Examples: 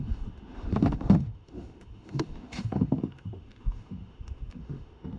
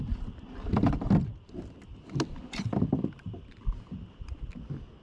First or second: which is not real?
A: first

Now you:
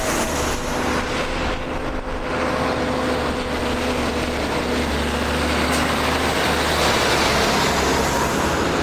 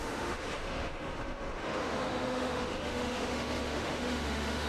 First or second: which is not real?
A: second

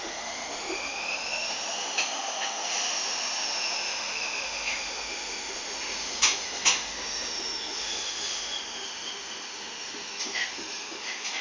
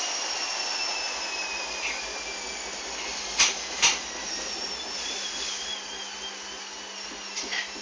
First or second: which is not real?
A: first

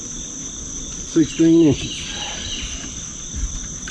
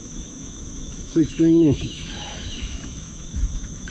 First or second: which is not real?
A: second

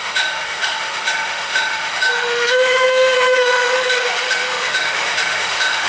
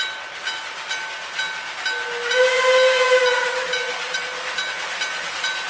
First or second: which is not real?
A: first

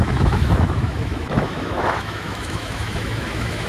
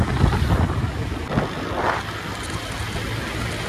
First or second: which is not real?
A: first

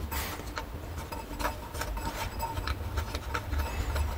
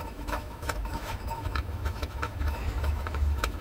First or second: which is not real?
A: second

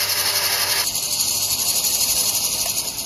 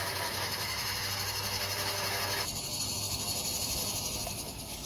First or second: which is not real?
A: second